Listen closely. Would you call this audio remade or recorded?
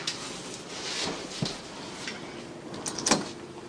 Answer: recorded